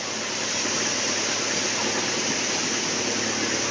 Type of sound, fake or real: real